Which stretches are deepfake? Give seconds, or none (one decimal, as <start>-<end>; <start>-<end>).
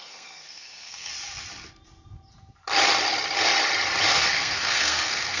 0.0-1.1; 4.3-5.4